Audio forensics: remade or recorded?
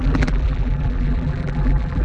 remade